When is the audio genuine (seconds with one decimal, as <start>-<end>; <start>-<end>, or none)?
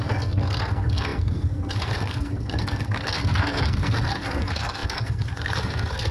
none